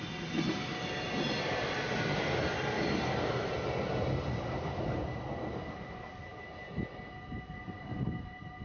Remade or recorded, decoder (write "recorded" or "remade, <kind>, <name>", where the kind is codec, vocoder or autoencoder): recorded